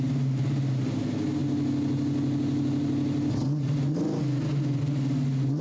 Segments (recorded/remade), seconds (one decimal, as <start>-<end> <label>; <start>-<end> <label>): 0.0-5.6 recorded